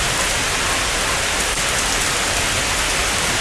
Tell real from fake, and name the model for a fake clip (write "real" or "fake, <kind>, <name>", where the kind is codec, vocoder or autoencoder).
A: real